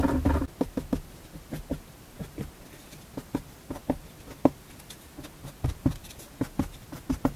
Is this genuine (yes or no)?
yes